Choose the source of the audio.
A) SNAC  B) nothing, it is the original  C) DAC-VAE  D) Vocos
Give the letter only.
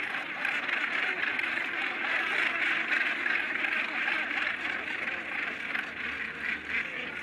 B